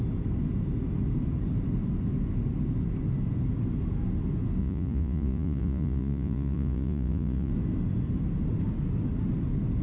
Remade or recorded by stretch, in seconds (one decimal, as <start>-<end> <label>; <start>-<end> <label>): 0.0-4.6 recorded; 4.6-7.5 remade; 7.5-9.8 recorded